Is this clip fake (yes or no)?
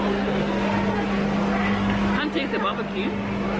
no